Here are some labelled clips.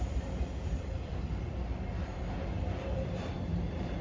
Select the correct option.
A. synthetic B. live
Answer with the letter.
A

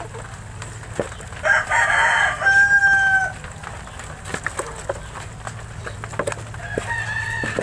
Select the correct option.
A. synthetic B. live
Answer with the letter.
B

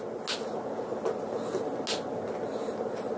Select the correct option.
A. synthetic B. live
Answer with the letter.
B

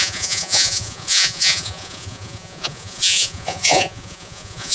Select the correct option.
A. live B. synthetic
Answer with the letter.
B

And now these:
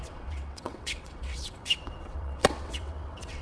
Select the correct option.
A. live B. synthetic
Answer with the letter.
B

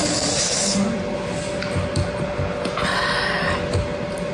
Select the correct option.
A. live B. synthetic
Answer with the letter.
A